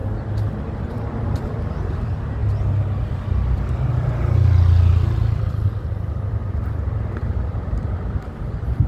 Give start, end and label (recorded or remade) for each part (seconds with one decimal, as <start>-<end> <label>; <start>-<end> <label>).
0.0-6.4 recorded; 6.4-8.4 remade; 8.4-8.9 recorded